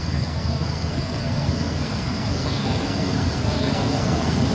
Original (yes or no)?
no